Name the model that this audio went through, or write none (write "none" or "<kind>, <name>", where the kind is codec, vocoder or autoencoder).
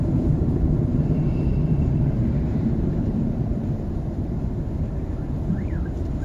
vocoder, BigVGAN v2